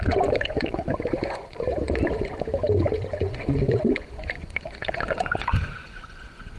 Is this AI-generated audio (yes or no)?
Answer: yes